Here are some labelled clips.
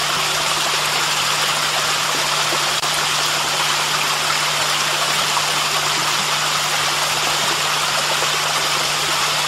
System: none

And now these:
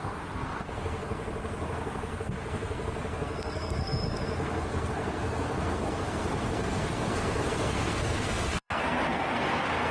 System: codec, SNAC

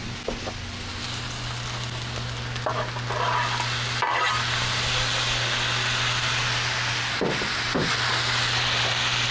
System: none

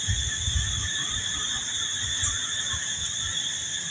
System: none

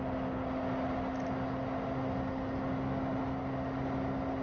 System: none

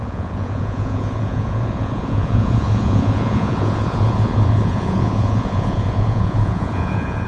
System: vocoder, Vocos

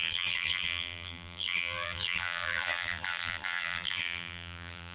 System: vocoder, BigVGAN v2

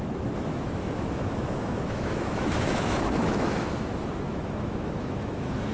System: autoencoder, DAC-VAE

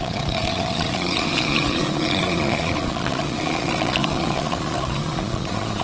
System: vocoder, Vocos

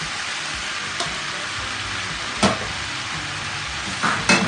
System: none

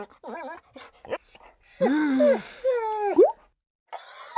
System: none